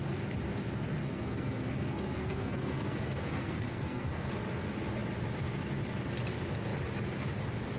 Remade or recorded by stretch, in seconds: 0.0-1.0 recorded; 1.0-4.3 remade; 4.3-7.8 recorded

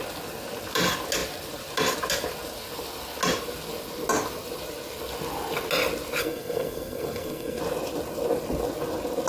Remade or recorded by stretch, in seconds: 0.0-6.2 recorded; 6.2-7.6 remade; 7.6-9.3 recorded

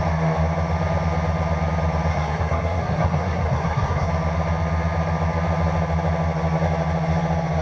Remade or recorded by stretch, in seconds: 0.0-2.1 recorded; 2.1-4.1 remade; 4.1-7.6 recorded

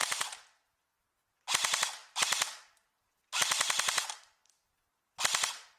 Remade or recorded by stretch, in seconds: 0.0-5.8 recorded

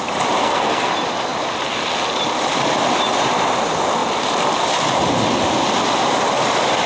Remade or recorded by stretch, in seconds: 0.0-0.4 recorded; 0.4-0.9 remade; 0.9-6.9 recorded

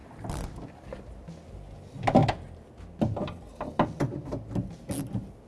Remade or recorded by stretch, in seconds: 0.0-5.5 recorded